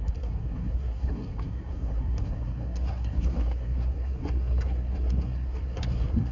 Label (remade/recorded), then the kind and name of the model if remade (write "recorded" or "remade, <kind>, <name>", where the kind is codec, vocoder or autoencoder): remade, codec, SNAC